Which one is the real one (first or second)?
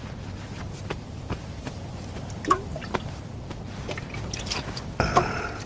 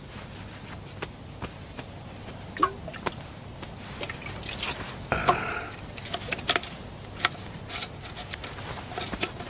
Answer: second